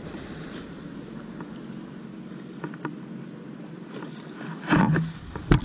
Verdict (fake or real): real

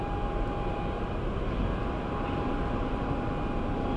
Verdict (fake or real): real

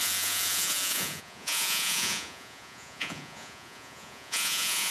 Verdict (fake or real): fake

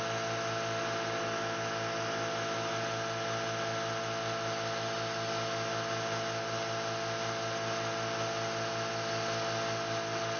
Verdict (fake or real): real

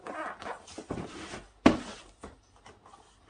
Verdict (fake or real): real